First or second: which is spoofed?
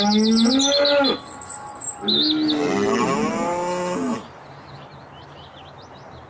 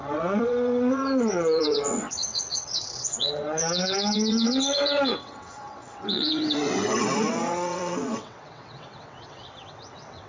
second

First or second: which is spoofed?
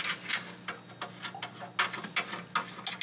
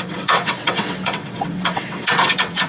second